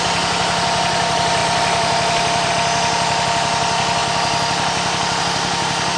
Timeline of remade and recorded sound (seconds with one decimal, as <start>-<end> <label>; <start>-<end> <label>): 0.0-1.4 recorded; 1.4-2.5 remade; 2.5-6.0 recorded